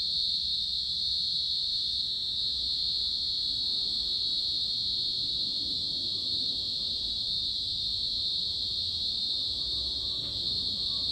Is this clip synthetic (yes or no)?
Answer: no